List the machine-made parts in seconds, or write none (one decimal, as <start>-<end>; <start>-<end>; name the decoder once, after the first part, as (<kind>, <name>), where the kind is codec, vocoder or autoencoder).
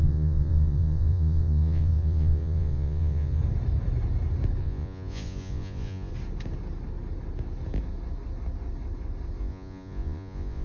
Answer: 0.0-3.4 (vocoder, Vocos); 4.6-6.1; 9.4-10.6